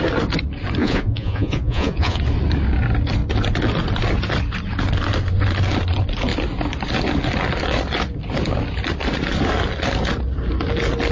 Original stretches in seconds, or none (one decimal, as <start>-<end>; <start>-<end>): 0.0-0.8; 2.2-11.1